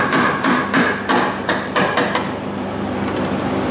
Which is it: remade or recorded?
recorded